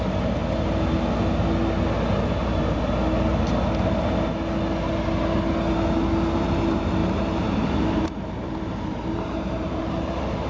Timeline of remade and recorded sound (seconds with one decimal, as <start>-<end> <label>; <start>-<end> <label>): 0.0-2.4 recorded; 2.4-2.9 remade; 2.9-7.0 recorded; 7.0-10.5 remade